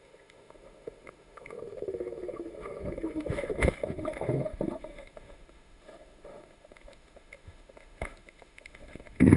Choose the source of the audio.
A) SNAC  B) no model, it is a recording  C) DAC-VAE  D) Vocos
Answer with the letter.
C